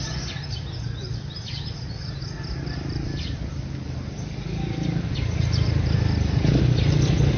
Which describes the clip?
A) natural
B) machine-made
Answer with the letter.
A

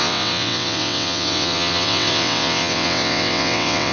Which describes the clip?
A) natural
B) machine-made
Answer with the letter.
B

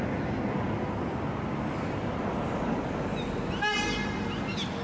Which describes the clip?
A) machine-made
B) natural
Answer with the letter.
B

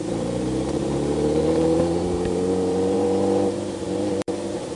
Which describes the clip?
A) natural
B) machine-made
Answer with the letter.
B